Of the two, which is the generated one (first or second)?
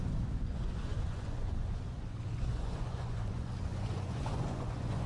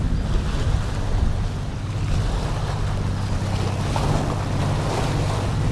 first